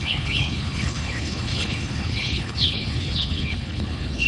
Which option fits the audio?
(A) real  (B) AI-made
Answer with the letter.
B